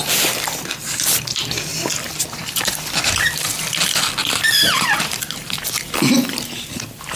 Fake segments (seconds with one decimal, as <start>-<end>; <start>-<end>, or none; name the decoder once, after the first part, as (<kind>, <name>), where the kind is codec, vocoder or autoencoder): 0.0-7.2 (vocoder, BigVGAN v2)